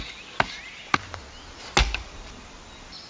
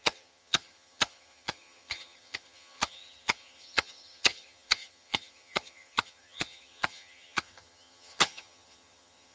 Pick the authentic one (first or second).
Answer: first